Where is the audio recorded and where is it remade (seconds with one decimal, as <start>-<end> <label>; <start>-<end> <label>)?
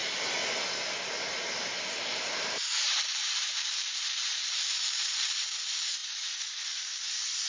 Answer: 0.0-1.8 recorded; 1.8-7.5 remade